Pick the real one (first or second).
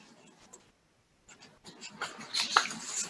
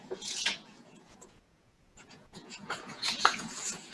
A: first